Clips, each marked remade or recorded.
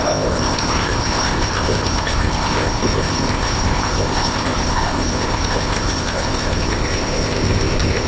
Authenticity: remade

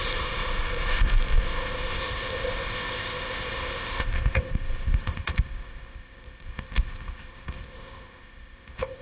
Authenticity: remade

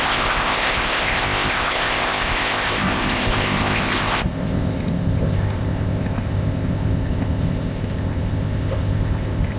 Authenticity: remade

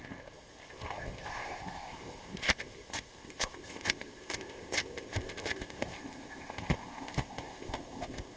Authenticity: remade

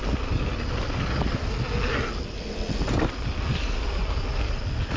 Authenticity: recorded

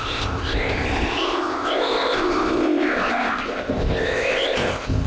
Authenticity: remade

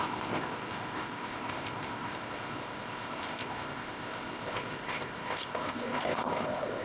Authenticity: remade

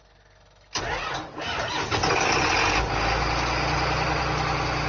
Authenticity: recorded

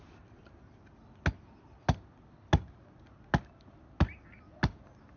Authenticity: recorded